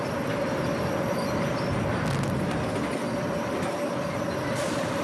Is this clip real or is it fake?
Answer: real